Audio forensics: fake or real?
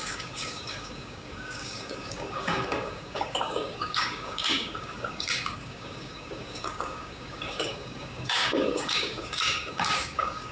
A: fake